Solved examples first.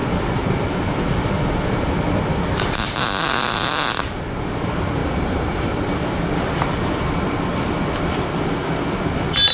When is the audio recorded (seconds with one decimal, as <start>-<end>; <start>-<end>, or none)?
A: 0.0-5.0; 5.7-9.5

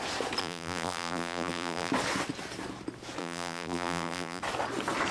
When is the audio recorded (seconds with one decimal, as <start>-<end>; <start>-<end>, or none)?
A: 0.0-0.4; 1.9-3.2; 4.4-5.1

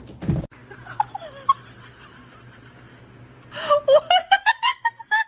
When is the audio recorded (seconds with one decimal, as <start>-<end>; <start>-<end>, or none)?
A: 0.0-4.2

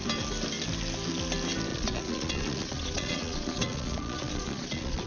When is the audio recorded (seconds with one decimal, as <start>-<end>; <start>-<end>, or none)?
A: 0.0-1.7

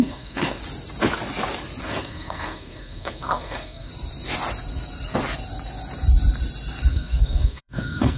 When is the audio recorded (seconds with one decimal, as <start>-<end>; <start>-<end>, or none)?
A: 0.6-1.8; 3.9-6.9

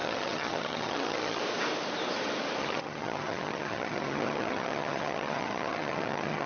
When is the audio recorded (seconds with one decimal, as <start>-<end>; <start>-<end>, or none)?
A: 1.4-2.6

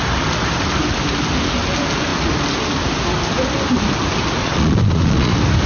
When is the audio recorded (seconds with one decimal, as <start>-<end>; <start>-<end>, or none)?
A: 0.0-4.4; 5.3-5.7